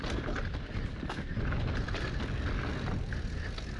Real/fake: real